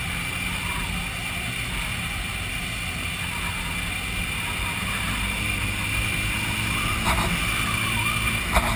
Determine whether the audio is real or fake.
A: real